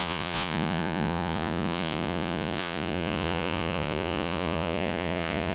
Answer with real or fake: fake